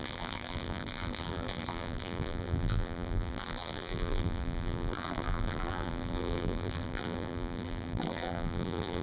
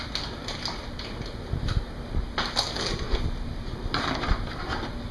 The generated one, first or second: first